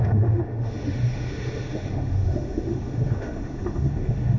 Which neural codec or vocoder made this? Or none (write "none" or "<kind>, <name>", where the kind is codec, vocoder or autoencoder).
autoencoder, DAC-VAE